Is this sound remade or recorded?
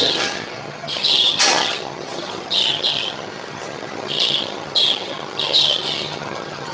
remade